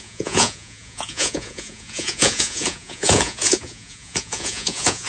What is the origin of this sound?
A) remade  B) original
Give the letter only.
A